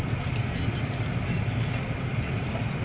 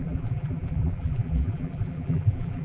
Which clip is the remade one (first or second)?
second